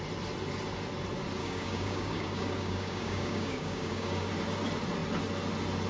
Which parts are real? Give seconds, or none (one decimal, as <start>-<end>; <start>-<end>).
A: 0.0-1.4; 4.3-5.9